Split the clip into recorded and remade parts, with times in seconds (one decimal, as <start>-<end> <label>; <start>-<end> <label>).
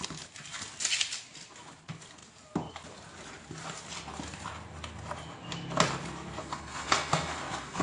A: 0.0-6.4 recorded; 6.4-7.8 remade